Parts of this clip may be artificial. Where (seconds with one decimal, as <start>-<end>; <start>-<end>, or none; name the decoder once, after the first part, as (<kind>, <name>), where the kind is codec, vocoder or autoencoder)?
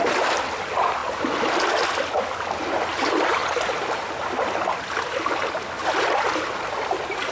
none